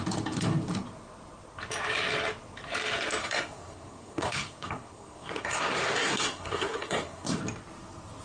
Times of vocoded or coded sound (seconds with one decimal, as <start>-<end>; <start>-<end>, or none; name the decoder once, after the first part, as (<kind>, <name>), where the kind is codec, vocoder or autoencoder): 3.2-7.4 (codec, SNAC)